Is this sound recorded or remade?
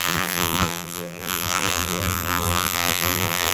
remade